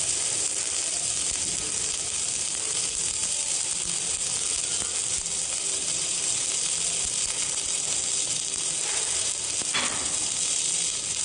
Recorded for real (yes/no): yes